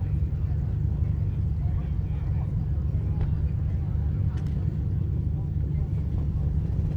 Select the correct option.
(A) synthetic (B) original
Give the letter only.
B